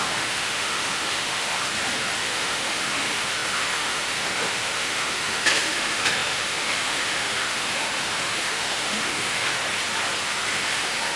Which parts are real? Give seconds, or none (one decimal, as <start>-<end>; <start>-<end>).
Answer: 1.7-2.2; 9.6-10.2